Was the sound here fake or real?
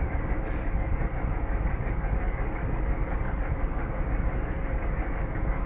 fake